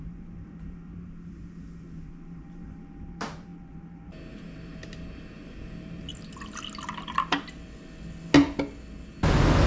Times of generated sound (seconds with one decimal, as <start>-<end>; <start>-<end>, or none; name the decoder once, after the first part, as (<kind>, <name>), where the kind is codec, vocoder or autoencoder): 0.0-6.1 (vocoder, BigVGAN v2)